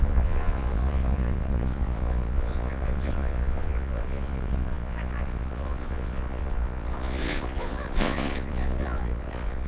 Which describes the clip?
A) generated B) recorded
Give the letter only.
A